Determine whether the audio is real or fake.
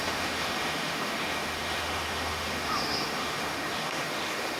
fake